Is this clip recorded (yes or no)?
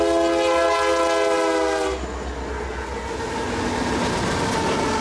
yes